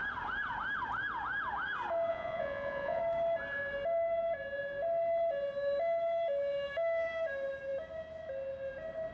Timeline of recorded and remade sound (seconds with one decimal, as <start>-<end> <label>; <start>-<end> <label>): 0.0-2.1 recorded; 2.1-3.0 remade; 3.0-9.1 recorded